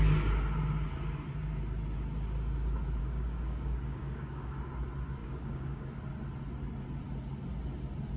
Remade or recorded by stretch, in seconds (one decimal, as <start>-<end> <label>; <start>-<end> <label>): 0.0-3.0 recorded; 3.0-4.7 remade; 4.7-5.2 recorded; 5.2-6.0 remade; 6.0-8.2 recorded